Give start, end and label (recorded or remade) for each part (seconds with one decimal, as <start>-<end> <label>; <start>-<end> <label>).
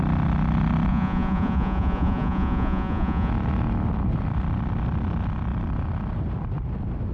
0.0-0.9 recorded; 0.9-3.3 remade; 3.3-7.1 recorded